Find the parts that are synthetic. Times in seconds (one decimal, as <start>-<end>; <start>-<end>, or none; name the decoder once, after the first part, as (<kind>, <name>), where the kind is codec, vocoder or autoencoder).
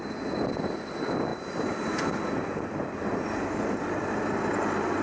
1.3-2.0 (vocoder, BigVGAN v2); 3.0-3.6